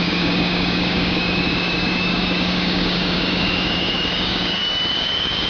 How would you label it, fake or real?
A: fake